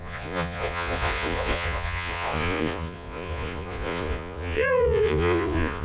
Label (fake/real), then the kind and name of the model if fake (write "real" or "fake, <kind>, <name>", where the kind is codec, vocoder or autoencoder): fake, vocoder, Vocos